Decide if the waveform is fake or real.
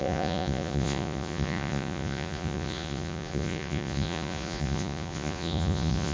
fake